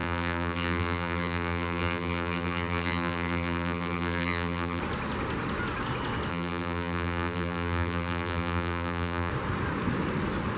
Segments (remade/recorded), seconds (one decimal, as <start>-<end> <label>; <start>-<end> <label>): 0.0-4.8 remade; 4.8-6.3 recorded; 6.3-9.3 remade; 9.3-10.6 recorded